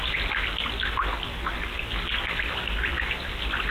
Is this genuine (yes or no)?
yes